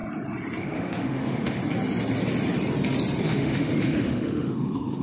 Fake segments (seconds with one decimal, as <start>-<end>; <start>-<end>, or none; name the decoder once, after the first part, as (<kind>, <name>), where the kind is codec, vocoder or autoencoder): 0.6-1.6 (autoencoder, DAC-VAE); 3.2-5.0